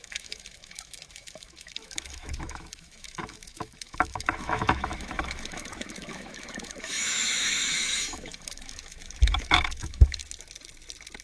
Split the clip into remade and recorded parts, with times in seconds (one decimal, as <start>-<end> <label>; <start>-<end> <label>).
0.0-10.2 remade; 10.2-11.2 recorded